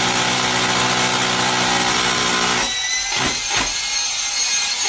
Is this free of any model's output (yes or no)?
yes